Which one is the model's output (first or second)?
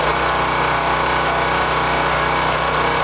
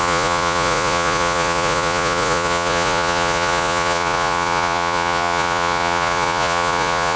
second